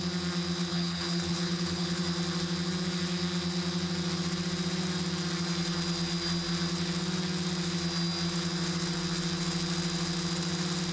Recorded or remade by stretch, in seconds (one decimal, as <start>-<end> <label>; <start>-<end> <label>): 0.0-0.7 recorded; 0.7-2.0 remade; 2.0-10.9 recorded